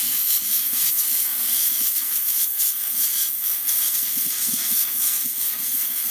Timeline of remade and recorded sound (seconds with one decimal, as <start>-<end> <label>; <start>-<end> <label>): 0.0-6.1 remade